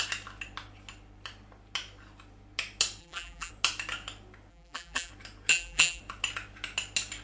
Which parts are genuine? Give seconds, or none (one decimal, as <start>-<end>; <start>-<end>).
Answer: 0.0-3.0; 3.5-4.5; 5.1-5.5; 6.0-7.2